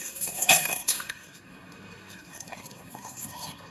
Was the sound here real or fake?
fake